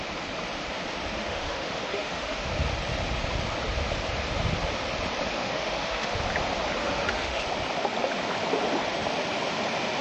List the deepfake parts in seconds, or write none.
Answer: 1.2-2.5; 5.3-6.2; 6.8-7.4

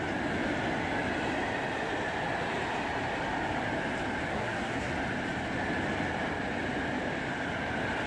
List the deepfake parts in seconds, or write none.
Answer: 4.3-4.9

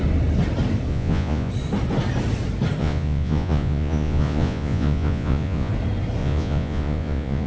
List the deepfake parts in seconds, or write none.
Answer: 0.9-1.5; 2.8-5.7; 6.2-7.5

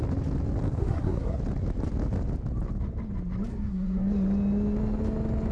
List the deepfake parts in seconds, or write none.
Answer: 0.8-1.4; 3.5-4.0

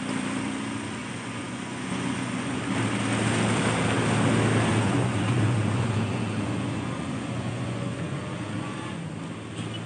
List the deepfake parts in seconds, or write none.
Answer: 1.0-2.6; 4.7-9.1

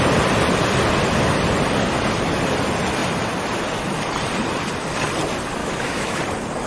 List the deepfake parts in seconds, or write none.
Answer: 5.6-6.2

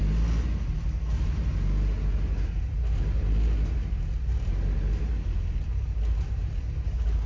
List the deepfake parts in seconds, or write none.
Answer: none